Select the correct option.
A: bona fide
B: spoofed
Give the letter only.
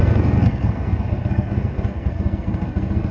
B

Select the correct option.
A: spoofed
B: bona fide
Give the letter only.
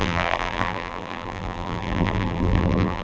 A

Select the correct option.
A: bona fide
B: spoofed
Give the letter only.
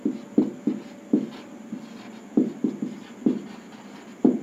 A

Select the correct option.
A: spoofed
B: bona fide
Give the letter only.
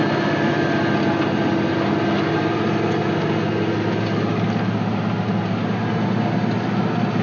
B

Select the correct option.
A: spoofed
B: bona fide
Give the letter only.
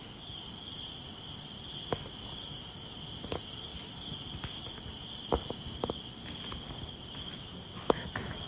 B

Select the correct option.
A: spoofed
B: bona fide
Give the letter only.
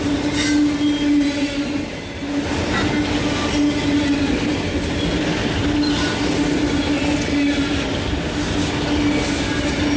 B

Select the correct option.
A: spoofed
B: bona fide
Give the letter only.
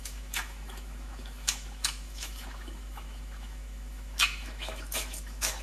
A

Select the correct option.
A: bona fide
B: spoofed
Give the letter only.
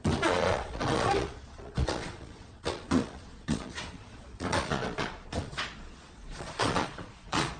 B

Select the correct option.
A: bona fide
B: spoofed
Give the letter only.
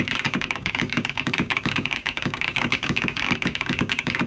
B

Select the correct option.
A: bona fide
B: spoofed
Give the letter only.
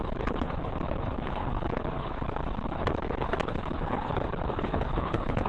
B